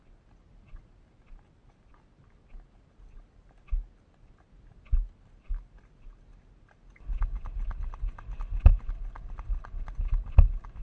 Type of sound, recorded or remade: recorded